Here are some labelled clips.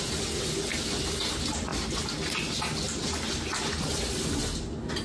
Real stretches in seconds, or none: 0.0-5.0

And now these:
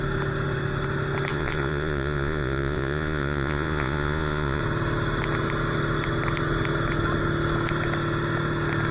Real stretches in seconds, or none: 0.0-1.3; 4.6-8.9